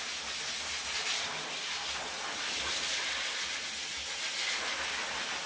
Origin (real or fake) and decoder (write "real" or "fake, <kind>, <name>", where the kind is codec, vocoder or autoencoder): real